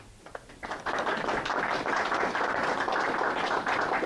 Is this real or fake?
real